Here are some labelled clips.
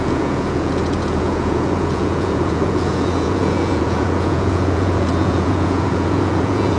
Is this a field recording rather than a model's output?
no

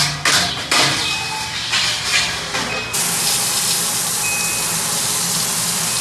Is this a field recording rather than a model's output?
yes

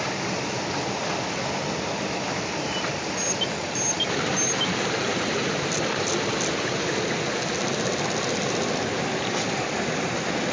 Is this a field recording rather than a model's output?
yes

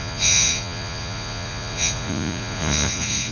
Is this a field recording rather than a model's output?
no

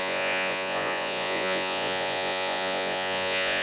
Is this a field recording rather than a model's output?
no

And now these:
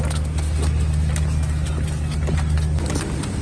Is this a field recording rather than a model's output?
yes